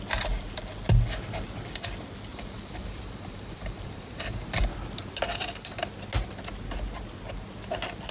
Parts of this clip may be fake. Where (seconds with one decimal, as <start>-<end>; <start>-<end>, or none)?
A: 2.3-4.6; 5.3-5.9